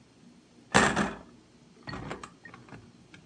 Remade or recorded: recorded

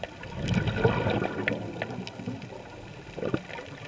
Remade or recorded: recorded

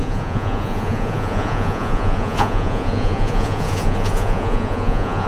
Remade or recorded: remade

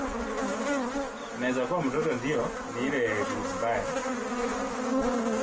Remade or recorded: recorded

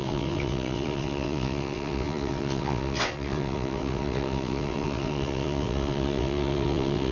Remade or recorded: remade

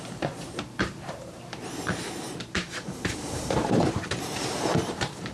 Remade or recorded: remade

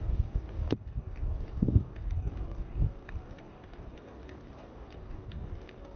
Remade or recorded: remade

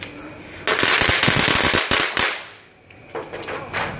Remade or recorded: recorded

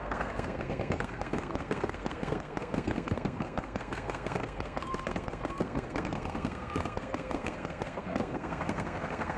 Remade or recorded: remade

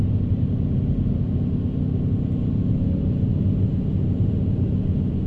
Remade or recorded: recorded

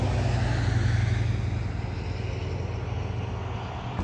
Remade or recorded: recorded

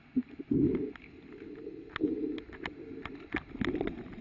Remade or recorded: recorded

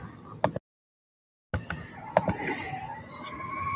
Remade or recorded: recorded